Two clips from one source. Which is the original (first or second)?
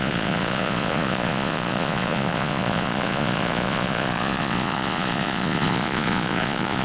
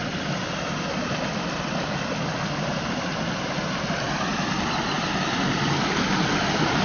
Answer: second